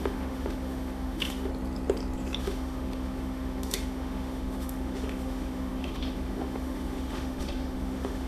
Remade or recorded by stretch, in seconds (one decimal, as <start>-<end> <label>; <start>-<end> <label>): 0.0-1.5 remade; 1.5-2.4 recorded; 2.4-8.3 remade